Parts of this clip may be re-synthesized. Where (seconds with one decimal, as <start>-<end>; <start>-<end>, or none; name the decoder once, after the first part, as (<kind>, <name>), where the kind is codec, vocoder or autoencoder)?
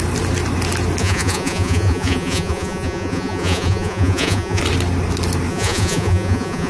1.0-4.6 (vocoder, Vocos); 5.5-6.7